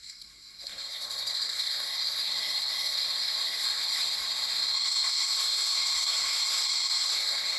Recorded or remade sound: remade